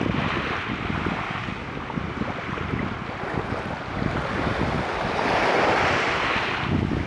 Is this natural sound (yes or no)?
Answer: yes